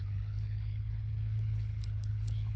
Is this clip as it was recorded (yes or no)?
no